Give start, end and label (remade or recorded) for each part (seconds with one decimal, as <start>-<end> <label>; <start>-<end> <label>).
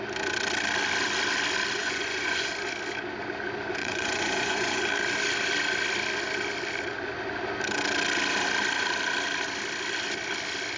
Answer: 0.0-1.8 recorded; 1.8-2.5 remade; 2.5-3.8 recorded; 3.8-4.8 remade; 4.8-10.8 recorded